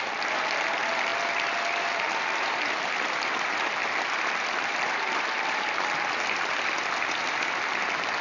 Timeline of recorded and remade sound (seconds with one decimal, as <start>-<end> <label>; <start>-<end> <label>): 0.0-8.2 recorded